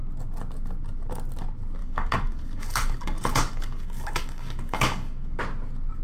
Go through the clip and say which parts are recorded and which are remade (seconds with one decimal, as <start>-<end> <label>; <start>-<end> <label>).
0.0-1.8 recorded; 1.8-5.4 remade; 5.4-6.0 recorded